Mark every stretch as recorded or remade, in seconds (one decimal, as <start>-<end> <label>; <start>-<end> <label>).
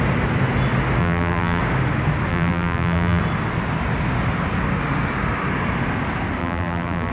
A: 0.0-1.0 recorded; 1.0-1.6 remade; 1.6-2.3 recorded; 2.3-3.2 remade; 3.2-6.4 recorded; 6.4-7.1 remade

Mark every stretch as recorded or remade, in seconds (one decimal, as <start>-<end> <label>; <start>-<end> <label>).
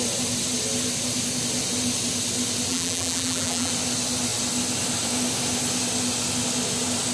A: 0.0-2.7 recorded; 2.7-3.7 remade; 3.7-7.1 recorded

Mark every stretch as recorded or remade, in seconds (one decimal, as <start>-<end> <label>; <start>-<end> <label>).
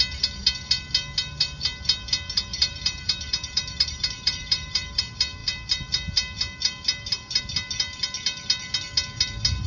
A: 0.0-2.5 recorded; 2.5-5.0 remade; 5.0-9.7 recorded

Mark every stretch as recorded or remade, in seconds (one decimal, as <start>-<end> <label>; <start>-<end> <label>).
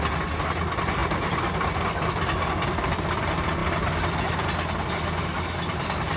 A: 0.0-6.2 recorded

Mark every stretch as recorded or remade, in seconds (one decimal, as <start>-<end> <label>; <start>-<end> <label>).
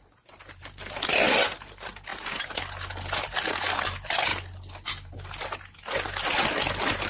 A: 0.0-7.1 recorded